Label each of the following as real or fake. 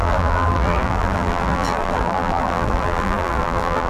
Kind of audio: fake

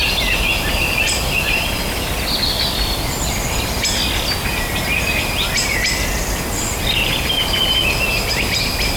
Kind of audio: real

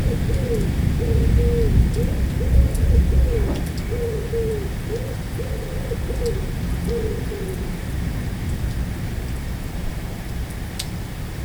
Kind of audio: real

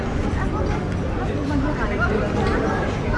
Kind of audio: real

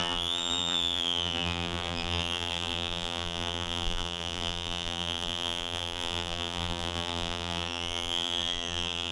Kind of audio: fake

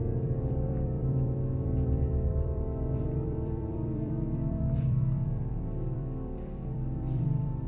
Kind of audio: fake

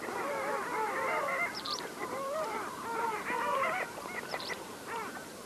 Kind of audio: fake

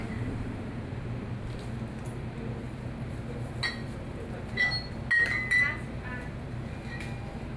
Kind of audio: real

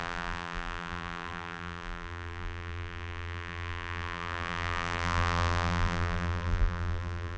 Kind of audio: fake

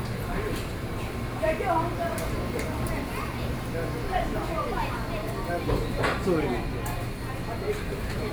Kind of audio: real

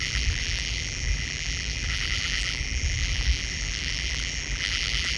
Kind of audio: fake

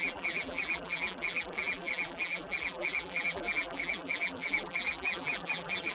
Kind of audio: fake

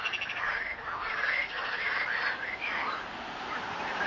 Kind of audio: fake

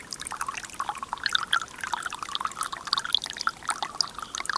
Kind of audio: real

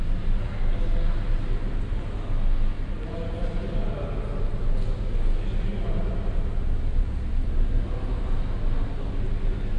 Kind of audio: real